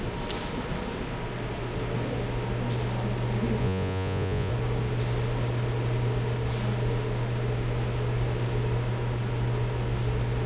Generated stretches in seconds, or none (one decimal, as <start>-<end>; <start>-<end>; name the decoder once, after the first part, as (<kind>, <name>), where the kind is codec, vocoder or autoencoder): 3.6-4.5 (vocoder, Vocos)